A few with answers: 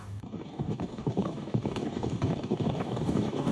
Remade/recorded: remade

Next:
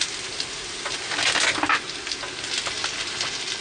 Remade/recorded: recorded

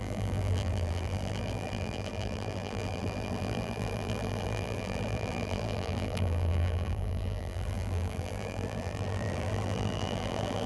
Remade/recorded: remade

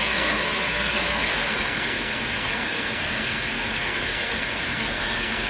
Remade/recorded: remade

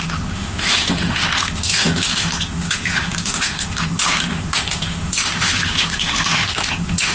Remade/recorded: remade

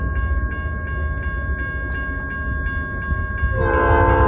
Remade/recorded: recorded